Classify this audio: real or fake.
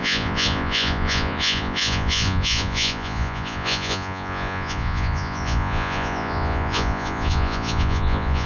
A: fake